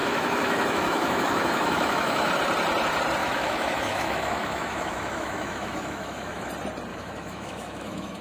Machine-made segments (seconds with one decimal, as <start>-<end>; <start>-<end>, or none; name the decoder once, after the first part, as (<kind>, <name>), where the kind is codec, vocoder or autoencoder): 0.0-2.3 (autoencoder, DAC-VAE); 3.2-6.5; 6.9-8.2

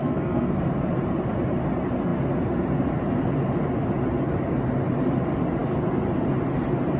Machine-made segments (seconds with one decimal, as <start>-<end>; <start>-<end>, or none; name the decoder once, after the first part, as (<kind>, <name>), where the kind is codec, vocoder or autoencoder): 0.0-0.6 (codec, SNAC)

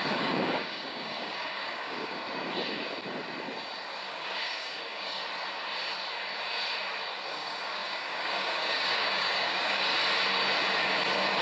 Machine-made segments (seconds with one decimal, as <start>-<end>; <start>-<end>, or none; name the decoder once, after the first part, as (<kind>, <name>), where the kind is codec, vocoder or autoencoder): 0.0-2.2 (codec, DAC); 4.1-5.2; 7.3-9.9

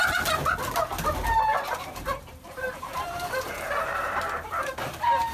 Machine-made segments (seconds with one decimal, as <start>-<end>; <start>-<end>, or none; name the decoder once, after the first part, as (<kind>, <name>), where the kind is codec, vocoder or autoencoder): 1.7-5.3 (vocoder, BigVGAN v2)

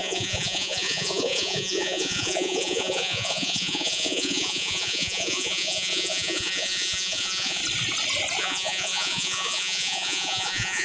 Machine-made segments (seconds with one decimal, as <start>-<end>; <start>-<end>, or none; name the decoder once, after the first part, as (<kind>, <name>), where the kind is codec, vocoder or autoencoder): 0.0-7.6 (vocoder, Vocos); 8.4-10.8

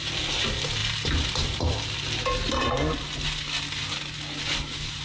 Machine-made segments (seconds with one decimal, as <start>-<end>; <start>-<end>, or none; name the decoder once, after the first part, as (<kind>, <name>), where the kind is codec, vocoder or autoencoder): none

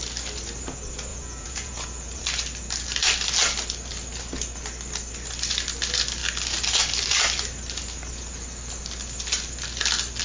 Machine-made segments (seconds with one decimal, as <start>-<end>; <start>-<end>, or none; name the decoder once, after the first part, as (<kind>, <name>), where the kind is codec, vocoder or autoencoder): 1.1-2.2 (vocoder, Vocos)

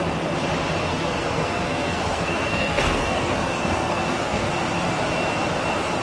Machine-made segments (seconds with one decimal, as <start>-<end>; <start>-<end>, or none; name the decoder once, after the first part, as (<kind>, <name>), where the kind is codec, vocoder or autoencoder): 0.9-4.5 (codec, SNAC)